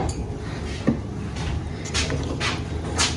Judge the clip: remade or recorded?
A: recorded